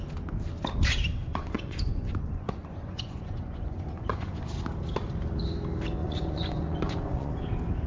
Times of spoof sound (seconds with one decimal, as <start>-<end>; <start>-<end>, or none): 1.2-4.5; 6.0-7.3